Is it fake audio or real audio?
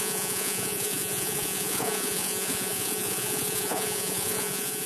fake